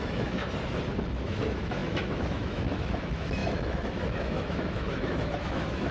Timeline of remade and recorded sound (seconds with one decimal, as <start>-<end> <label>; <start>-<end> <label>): 0.0-0.4 remade; 0.4-1.1 recorded; 1.1-5.9 remade